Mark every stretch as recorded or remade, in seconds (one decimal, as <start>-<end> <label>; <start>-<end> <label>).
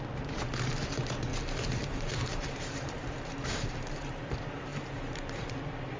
0.0-1.3 recorded; 1.3-4.2 remade; 4.2-4.7 recorded; 4.7-5.5 remade; 5.5-6.0 recorded